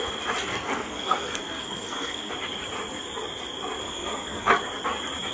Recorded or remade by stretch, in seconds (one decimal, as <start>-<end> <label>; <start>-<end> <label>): 0.0-0.5 recorded; 0.5-2.3 remade; 2.3-3.8 recorded; 3.8-4.5 remade; 4.5-5.3 recorded